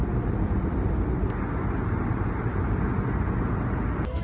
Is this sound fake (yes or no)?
no